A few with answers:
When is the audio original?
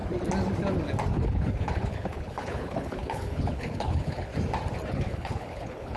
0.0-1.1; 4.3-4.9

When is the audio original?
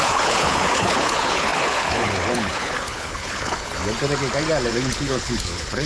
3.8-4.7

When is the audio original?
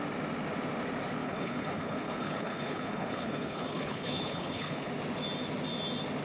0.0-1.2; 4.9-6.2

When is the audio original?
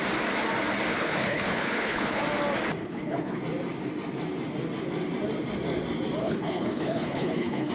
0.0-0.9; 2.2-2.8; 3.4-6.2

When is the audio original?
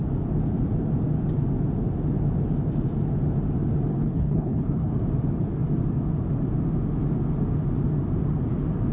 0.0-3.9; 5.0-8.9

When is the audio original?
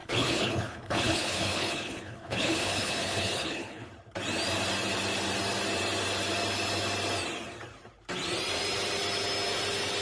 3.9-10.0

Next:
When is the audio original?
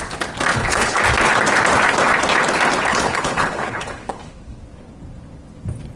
0.0-0.5; 1.0-2.9; 4.6-6.0